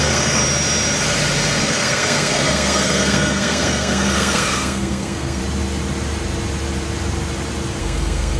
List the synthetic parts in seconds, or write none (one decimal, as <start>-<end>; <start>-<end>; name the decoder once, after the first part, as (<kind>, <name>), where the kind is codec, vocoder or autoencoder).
0.0-0.4 (codec, SNAC); 1.6-5.4; 7.8-8.4